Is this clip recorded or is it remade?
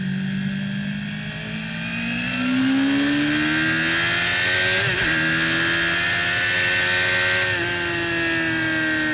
recorded